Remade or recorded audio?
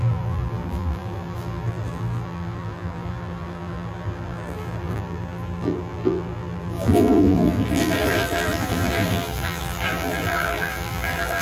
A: remade